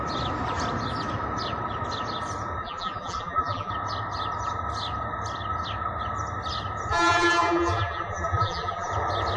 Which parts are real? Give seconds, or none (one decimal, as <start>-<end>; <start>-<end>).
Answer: 0.0-2.6; 3.7-6.9; 8.9-9.4